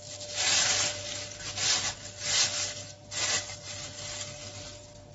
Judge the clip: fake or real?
real